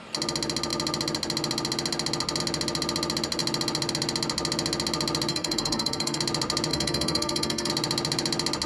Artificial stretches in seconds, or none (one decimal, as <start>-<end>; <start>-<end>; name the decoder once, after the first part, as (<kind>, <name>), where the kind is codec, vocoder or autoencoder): 5.3-6.2 (codec, SNAC); 6.7-7.7